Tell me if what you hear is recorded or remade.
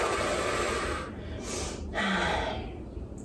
recorded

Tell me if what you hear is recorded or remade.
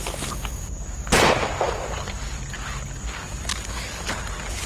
recorded